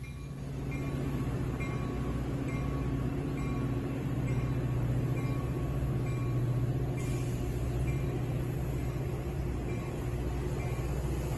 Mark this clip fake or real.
real